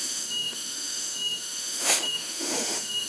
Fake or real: fake